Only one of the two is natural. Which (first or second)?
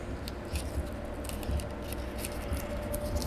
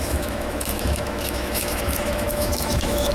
first